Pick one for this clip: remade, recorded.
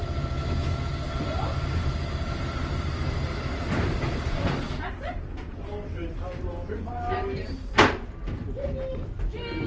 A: remade